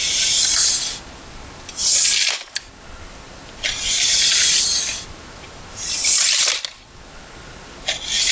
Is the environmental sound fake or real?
real